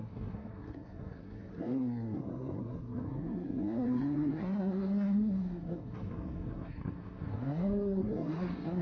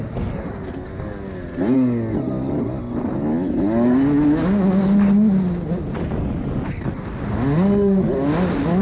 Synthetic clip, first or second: first